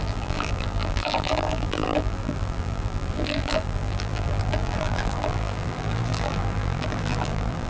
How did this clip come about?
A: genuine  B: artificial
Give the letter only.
B